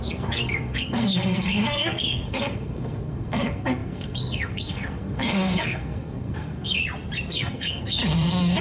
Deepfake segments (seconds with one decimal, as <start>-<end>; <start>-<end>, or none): 0.0-6.8; 7.3-8.0